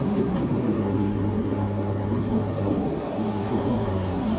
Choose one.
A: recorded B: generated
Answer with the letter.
B